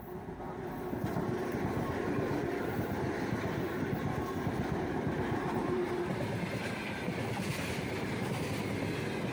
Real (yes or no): yes